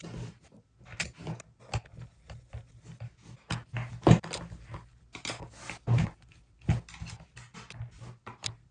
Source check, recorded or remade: recorded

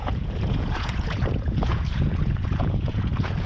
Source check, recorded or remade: remade